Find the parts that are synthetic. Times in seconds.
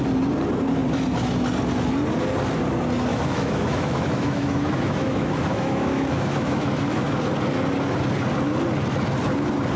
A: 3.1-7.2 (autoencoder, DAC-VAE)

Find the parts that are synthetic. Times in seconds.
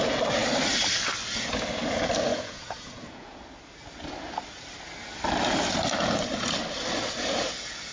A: 2.3-3.4 (vocoder, Vocos)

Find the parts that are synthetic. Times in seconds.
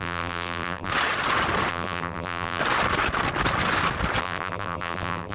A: 0.0-0.9 (vocoder, BigVGAN v2); 1.7-2.6; 4.2-5.3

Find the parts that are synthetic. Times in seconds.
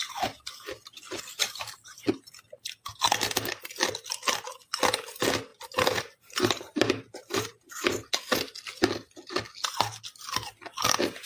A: 1.4-2.0 (vocoder, BigVGAN v2); 5.5-8.1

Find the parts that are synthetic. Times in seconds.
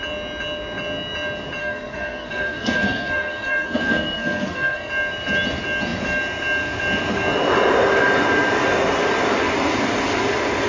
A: 1.6-4.9 (codec, SNAC)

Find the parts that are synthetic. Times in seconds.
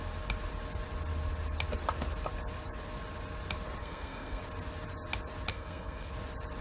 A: 3.8-4.4 (codec, SNAC); 5.5-6.1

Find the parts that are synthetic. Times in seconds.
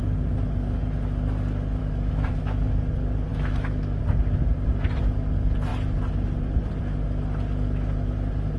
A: 1.8-2.7 (autoencoder, DAC-VAE); 3.3-4.0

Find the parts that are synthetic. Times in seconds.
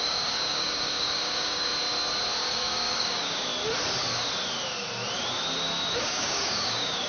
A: 0.0-1.7 (codec, DAC); 2.4-3.5; 6.0-7.1